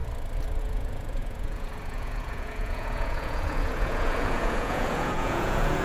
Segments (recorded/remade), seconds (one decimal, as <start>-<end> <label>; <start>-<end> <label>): 0.0-0.6 recorded; 0.6-5.8 remade